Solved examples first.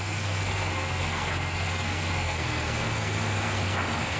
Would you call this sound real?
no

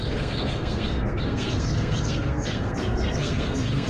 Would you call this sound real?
no